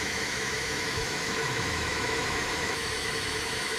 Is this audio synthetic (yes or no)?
yes